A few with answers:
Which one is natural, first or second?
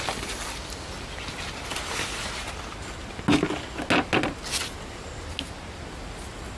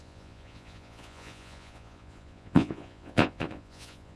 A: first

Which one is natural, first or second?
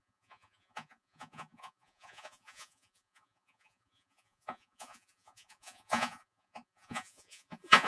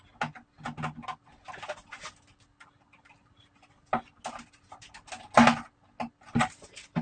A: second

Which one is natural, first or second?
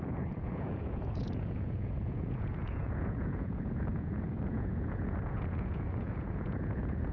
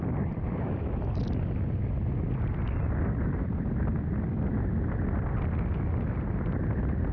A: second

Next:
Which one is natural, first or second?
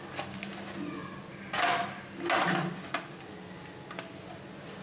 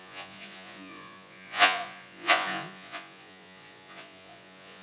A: first